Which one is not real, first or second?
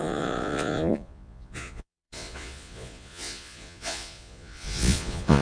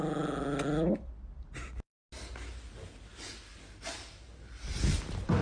first